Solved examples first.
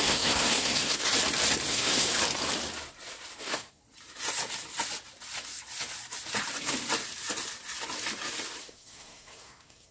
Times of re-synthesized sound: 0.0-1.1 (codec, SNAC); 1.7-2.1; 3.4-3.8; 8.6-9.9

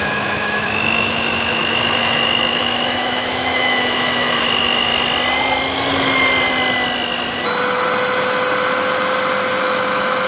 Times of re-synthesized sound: 0.0-4.9 (autoencoder, DAC-VAE); 9.6-10.3

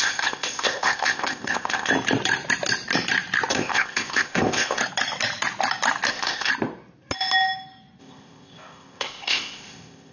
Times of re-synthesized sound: 0.0-1.9 (codec, ZipCodec); 3.5-4.8; 6.1-6.5; 8.0-10.1

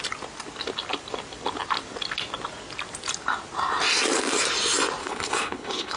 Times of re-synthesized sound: 5.0-6.0 (codec, HILCodec)

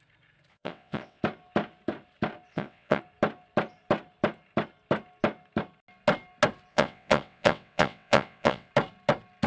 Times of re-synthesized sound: 0.5-1.2 (vocoder, WaveNeXt); 2.5-3.0; 6.7-8.7

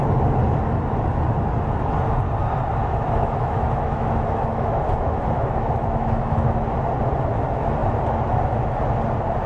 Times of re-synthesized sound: 2.8-6.5 (autoencoder, DAC-VAE)

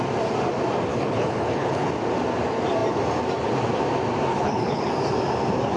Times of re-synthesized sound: 0.9-1.9 (codec, HILCodec); 4.3-4.9

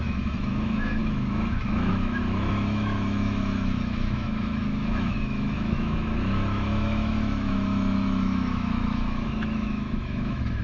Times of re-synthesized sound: 0.0-10.6 (autoencoder, DAC-VAE)